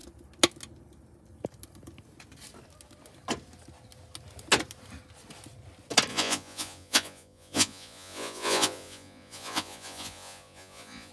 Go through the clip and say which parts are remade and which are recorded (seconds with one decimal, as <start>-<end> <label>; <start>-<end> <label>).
0.0-6.1 recorded; 6.1-11.1 remade